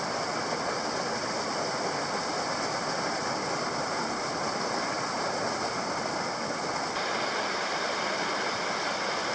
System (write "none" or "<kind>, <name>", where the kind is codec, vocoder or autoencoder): none